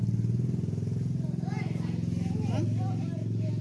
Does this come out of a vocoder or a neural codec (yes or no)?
no